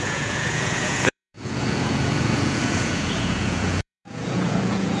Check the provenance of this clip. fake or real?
fake